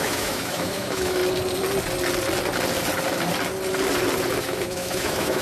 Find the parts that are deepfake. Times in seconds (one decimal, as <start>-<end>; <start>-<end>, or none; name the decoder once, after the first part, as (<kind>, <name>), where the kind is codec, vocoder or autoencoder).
0.0-1.2 (autoencoder, DAC-VAE); 4.4-5.4